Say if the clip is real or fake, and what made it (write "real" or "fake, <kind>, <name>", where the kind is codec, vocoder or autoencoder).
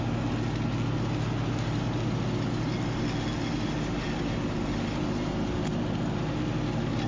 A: real